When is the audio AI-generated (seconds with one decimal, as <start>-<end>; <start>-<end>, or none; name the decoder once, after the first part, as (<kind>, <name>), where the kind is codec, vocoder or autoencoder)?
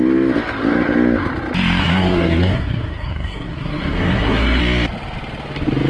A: 1.8-4.6 (codec, SNAC)